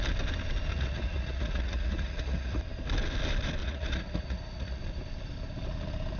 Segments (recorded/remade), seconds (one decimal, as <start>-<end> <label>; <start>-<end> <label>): 0.0-0.7 recorded; 0.7-2.6 remade; 2.6-3.6 recorded; 3.6-4.8 remade; 4.8-6.2 recorded